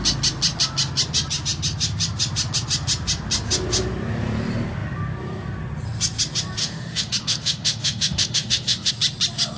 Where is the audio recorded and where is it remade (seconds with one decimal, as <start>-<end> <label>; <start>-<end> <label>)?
0.0-6.6 recorded; 6.6-8.9 remade; 8.9-9.6 recorded